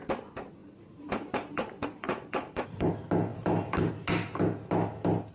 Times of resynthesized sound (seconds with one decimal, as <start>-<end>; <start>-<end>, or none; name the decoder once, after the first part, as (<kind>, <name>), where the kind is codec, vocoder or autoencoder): 0.6-2.9 (vocoder, BigVGAN v2); 3.3-3.9